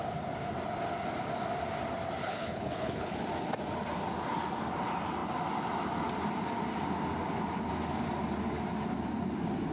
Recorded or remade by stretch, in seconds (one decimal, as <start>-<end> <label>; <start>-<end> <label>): 0.0-2.2 recorded; 2.2-3.2 remade; 3.2-9.7 recorded